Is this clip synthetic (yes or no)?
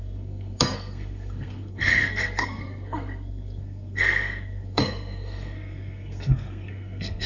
yes